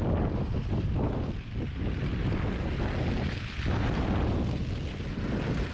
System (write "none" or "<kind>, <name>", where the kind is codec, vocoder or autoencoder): none